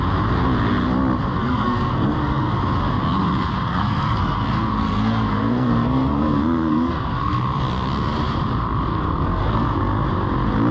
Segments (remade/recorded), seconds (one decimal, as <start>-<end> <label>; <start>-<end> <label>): 0.0-1.3 recorded; 1.3-2.6 remade; 2.6-3.7 recorded; 3.7-7.4 remade; 7.4-8.9 recorded; 8.9-9.8 remade; 9.8-10.7 recorded